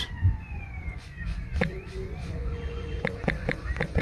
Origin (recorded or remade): remade